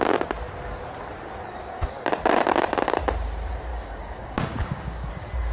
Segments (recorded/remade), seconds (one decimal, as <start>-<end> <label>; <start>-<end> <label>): 0.0-3.7 recorded; 3.7-5.1 remade; 5.1-5.5 recorded